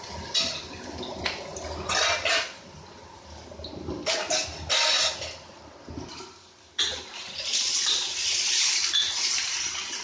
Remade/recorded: recorded